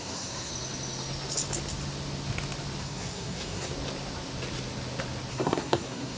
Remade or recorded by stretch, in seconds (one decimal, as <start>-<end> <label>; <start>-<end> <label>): 0.0-0.5 remade; 0.5-2.8 recorded; 2.8-3.7 remade; 3.7-5.3 recorded; 5.3-6.2 remade